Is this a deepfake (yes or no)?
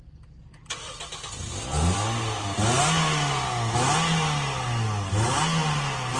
no